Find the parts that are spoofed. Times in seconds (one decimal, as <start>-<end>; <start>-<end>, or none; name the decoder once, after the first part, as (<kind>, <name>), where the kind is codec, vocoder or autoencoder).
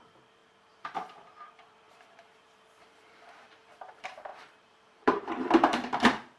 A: 0.0-6.4 (vocoder, BigVGAN v2)